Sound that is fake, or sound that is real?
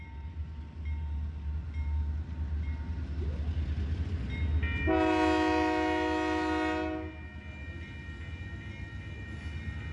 real